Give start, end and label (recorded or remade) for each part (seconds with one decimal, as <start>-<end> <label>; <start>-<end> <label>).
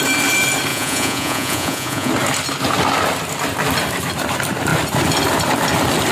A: 0.0-0.7 recorded; 0.7-2.1 remade; 2.1-6.1 recorded